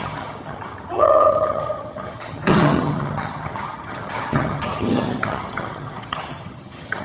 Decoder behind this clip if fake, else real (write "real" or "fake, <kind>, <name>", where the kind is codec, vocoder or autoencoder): fake, vocoder, HiFi-GAN